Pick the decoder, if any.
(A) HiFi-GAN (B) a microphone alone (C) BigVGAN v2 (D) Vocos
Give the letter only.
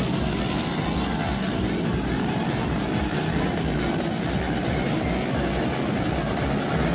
B